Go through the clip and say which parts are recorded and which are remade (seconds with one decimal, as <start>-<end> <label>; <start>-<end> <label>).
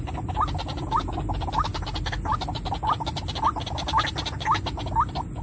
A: 0.0-5.4 recorded